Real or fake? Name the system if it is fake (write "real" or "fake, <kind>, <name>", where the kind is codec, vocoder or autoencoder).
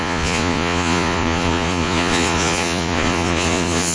fake, vocoder, Vocos